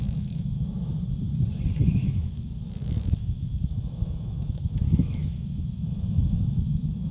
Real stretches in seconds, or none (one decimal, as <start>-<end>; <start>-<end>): 0.9-1.9